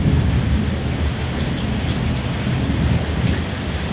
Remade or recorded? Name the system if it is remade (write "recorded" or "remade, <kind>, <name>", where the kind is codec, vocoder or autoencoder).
recorded